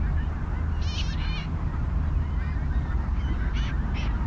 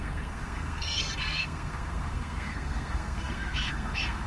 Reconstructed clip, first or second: second